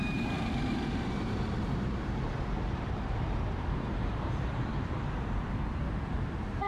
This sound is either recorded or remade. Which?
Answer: remade